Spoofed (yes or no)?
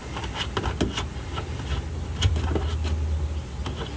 no